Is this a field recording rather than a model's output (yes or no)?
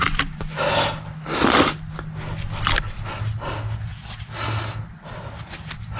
yes